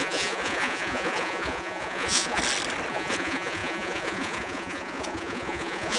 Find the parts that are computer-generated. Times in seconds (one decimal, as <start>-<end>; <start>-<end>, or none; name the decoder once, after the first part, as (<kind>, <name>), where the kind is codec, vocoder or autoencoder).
0.0-2.4 (vocoder, Vocos); 2.9-6.0